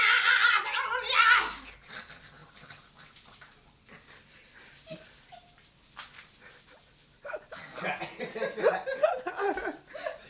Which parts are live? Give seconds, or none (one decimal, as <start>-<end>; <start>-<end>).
0.0-10.3